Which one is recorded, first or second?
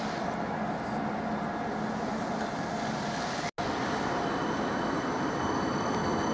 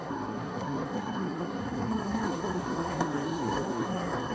first